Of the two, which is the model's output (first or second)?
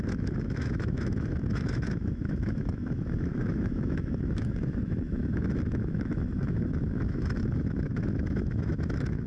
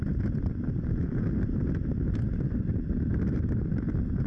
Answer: first